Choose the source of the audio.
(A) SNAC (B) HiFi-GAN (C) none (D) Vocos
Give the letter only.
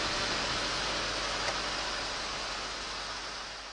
C